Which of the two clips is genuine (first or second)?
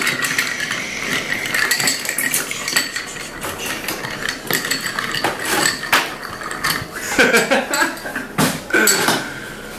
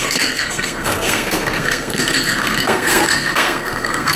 first